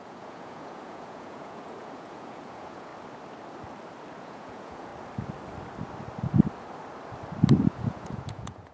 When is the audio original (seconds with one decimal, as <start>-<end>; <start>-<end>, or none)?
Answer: 2.9-4.2; 4.9-7.7

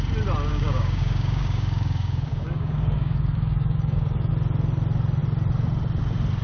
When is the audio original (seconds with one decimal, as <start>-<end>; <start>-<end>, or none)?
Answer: 0.0-0.5; 4.3-6.4

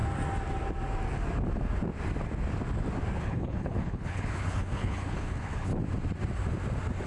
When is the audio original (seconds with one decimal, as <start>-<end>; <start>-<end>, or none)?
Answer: 0.0-3.2; 5.7-7.1

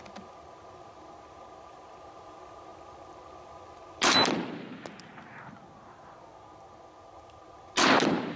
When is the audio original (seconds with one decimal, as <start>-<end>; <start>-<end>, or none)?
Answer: 0.0-8.4

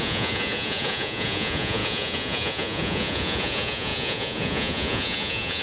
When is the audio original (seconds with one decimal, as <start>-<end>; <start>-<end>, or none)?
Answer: none

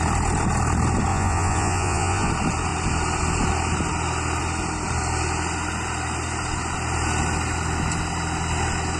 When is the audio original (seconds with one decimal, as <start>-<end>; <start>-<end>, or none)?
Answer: 0.0-1.1; 2.3-9.0

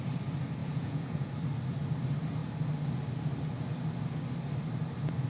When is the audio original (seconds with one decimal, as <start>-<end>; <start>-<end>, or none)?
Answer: 0.0-0.6; 1.3-5.3